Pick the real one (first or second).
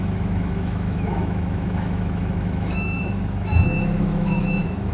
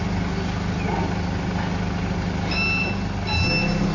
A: second